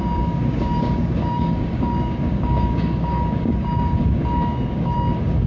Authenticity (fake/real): fake